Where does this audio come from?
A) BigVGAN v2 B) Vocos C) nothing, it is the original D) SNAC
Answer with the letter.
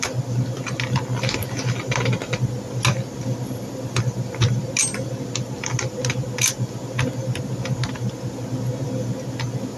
C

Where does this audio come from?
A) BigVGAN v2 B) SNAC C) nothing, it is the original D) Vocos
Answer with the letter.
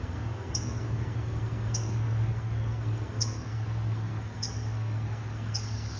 B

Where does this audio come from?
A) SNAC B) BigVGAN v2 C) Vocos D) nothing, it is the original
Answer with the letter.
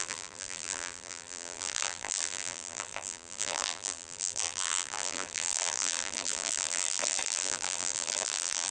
B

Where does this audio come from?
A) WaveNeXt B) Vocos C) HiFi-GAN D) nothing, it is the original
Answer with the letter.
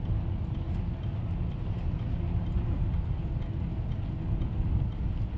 D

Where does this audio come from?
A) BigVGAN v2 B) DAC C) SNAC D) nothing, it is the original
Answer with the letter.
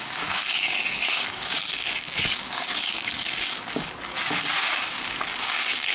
B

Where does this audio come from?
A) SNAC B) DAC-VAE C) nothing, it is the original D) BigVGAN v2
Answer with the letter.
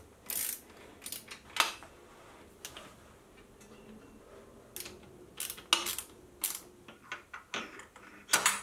C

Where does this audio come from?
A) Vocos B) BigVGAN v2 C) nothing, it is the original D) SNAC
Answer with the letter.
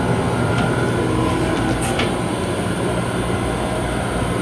C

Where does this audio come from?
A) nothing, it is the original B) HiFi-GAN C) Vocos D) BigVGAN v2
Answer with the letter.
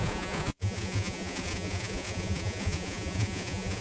C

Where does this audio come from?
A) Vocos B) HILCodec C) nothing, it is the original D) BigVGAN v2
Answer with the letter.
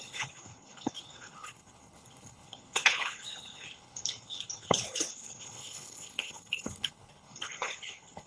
B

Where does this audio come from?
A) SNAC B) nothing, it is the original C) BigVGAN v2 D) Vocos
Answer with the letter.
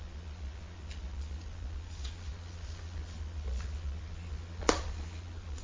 D